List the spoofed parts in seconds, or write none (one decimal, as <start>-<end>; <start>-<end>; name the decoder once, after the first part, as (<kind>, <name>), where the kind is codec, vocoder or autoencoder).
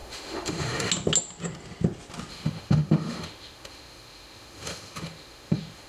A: 0.0-0.9 (autoencoder, DAC-VAE); 2.3-5.9